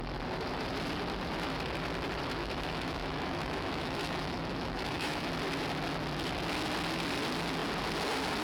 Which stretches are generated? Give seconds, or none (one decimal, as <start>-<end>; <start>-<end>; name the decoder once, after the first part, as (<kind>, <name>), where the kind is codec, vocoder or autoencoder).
2.4-5.3 (autoencoder, DAC-VAE)